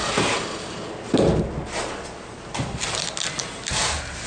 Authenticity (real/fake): real